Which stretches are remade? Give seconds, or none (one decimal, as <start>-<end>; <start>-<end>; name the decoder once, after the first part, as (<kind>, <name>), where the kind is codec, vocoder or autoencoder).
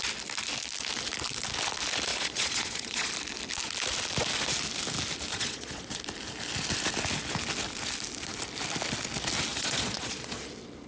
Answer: 2.1-3.1 (vocoder, Vocos); 5.3-6.0; 9.5-10.4